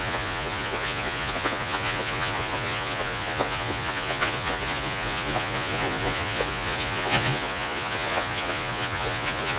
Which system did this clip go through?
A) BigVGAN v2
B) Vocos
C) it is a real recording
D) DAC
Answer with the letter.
B